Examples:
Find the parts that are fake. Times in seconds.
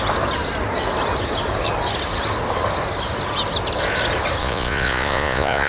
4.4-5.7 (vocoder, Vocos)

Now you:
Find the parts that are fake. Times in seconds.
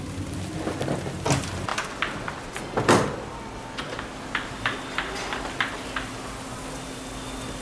none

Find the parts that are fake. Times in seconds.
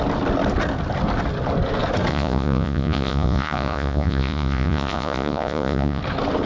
2.1-6.0 (vocoder, Vocos)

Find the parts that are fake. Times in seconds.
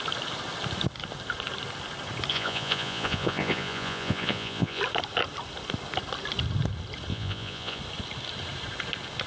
2.3-4.8 (vocoder, Vocos); 7.1-7.8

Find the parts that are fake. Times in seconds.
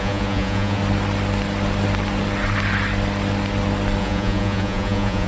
0.0-0.8 (vocoder, Vocos); 4.0-5.3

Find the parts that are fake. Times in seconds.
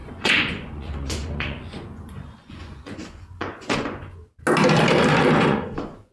0.0-4.2 (vocoder, Vocos); 5.4-6.1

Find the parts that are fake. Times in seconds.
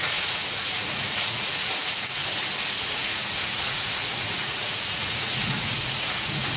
0.0-2.2 (vocoder, Vocos); 2.8-6.6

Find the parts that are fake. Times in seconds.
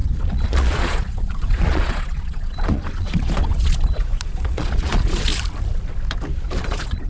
0.0-5.3 (vocoder, Vocos); 6.6-7.1